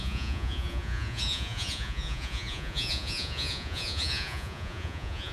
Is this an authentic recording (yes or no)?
no